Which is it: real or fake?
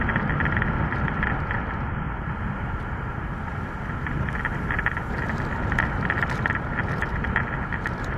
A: real